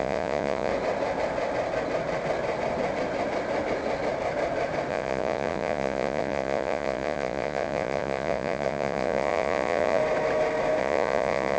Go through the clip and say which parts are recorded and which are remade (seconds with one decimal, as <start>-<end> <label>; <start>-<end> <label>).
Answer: 0.0-0.7 remade; 0.7-4.9 recorded; 4.9-10.0 remade; 10.0-10.8 recorded; 10.8-11.6 remade